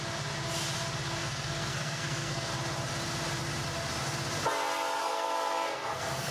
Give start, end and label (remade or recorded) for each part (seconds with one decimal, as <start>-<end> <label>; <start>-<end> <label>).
0.0-1.2 recorded; 1.2-2.5 remade; 2.5-5.0 recorded; 5.0-6.3 remade